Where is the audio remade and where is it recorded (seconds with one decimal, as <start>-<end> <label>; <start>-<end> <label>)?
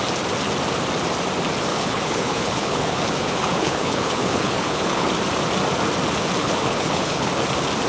0.0-1.7 recorded; 1.7-5.1 remade; 5.1-6.4 recorded; 6.4-7.3 remade; 7.3-7.9 recorded